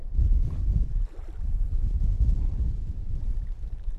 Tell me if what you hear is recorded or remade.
remade